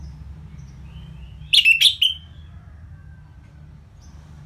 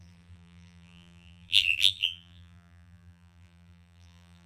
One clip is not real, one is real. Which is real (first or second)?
first